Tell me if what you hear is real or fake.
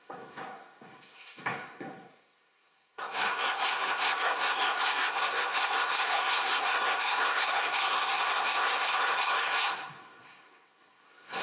fake